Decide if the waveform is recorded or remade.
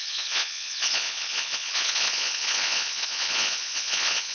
remade